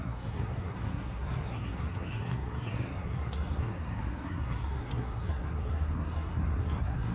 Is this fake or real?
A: fake